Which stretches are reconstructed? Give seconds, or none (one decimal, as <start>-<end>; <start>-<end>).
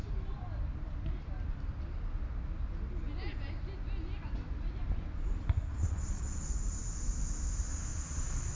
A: 5.7-6.5; 7.9-8.6